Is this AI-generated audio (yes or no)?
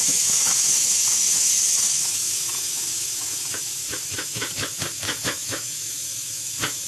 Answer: yes